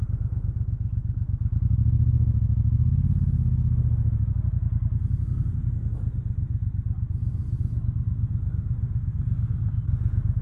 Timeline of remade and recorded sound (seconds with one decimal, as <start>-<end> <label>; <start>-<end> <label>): 0.0-10.4 recorded